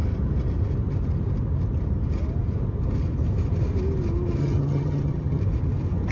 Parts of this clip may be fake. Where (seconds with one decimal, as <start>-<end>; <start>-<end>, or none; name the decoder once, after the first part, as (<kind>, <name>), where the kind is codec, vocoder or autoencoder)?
4.4-5.4 (vocoder, HiFi-GAN)